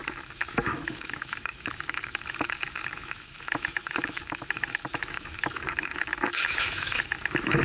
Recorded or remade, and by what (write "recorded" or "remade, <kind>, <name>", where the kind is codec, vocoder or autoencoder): remade, autoencoder, DAC-VAE